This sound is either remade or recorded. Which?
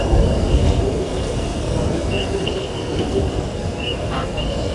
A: remade